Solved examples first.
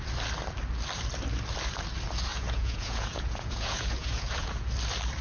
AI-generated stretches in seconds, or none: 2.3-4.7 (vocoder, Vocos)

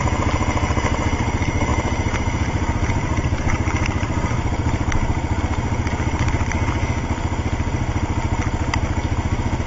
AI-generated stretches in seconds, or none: 1.7-5.4 (vocoder, BigVGAN v2)

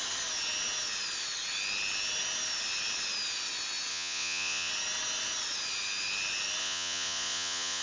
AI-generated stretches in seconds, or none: 3.9-4.7 (vocoder, Vocos); 6.6-7.8

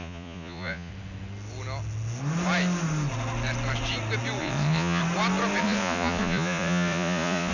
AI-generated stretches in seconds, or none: 0.0-0.9 (vocoder, Vocos); 4.4-5.0; 5.6-7.5